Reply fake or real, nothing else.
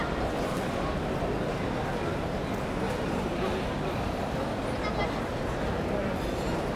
real